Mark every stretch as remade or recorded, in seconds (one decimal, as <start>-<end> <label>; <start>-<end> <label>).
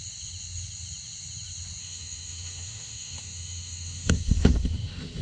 0.0-1.8 recorded; 1.8-5.2 remade